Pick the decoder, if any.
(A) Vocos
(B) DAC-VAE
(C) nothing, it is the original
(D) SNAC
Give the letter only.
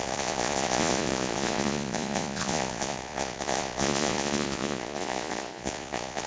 A